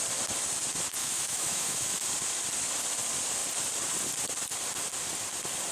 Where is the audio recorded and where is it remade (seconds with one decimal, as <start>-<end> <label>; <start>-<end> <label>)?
0.0-1.0 recorded; 1.0-2.1 remade; 2.1-5.7 recorded